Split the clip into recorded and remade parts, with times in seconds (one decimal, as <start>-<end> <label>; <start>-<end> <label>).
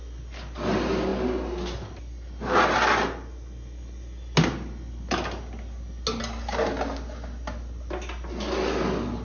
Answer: 0.0-9.2 recorded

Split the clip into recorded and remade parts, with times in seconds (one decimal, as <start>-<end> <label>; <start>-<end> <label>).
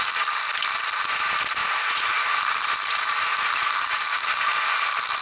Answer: 0.0-1.6 recorded; 1.6-2.2 remade; 2.2-5.2 recorded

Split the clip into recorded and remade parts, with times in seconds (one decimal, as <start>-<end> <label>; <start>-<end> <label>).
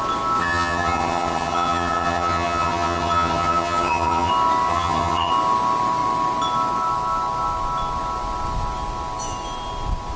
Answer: 0.0-0.4 recorded; 0.4-4.3 remade; 4.3-4.7 recorded; 4.7-5.3 remade; 5.3-10.2 recorded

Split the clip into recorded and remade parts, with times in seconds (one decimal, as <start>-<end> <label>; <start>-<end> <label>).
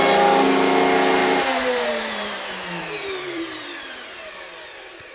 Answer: 0.0-1.2 recorded; 1.2-4.3 remade; 4.3-5.1 recorded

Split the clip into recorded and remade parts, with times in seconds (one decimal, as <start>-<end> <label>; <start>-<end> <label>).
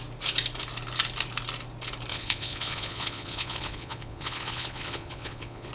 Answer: 0.0-2.1 recorded; 2.1-5.7 remade